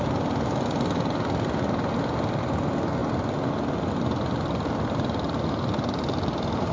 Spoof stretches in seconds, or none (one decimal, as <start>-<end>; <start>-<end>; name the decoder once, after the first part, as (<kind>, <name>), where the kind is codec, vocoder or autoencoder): none